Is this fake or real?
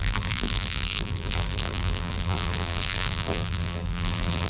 fake